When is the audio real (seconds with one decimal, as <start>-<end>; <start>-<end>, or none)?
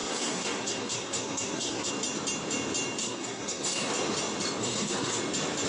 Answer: 1.9-3.0; 3.9-4.6; 5.2-5.7